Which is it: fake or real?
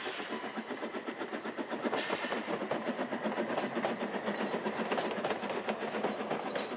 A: real